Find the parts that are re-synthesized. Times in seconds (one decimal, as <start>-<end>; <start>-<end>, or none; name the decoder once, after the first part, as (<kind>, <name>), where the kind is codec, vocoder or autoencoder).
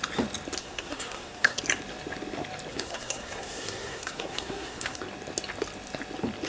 0.6-1.6 (codec, SNAC); 2.7-5.0